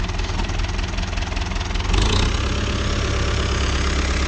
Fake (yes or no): no